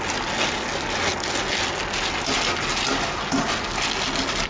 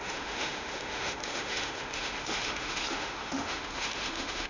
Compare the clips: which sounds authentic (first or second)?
first